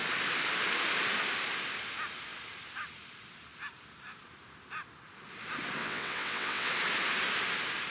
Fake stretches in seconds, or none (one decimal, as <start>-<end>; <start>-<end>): 5.8-6.7